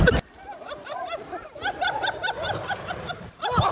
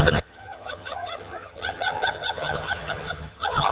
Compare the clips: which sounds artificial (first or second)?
second